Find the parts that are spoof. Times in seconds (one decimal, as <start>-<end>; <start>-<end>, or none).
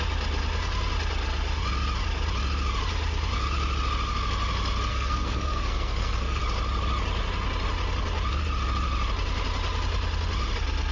4.9-6.4